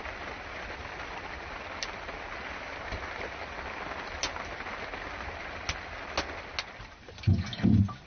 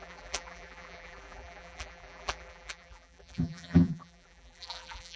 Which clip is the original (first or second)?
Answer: first